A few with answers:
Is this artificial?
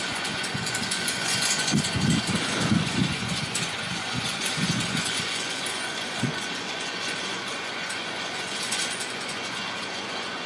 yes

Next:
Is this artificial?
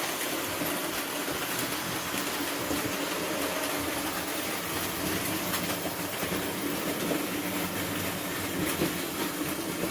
no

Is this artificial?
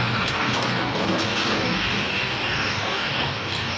yes